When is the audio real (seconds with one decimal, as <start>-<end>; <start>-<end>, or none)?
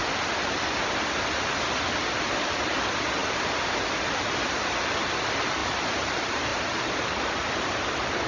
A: 0.0-5.6; 6.1-6.5; 7.4-8.3